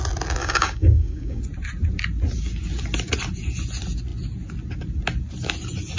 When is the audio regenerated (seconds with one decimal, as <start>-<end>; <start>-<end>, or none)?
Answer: 0.4-1.4